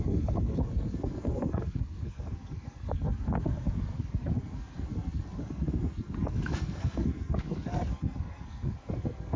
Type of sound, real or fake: fake